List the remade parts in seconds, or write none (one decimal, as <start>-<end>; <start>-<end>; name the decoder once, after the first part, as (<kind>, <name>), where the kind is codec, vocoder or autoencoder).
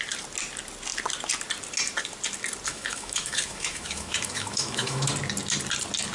2.7-5.1 (autoencoder, DAC-VAE)